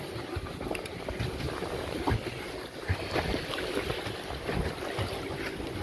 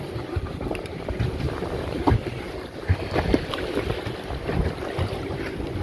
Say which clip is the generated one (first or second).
second